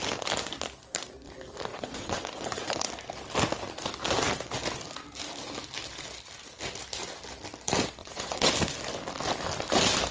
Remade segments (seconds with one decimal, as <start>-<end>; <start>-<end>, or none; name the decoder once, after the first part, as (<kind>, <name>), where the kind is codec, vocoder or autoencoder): 1.7-2.9 (vocoder, WaveNeXt); 8.0-8.5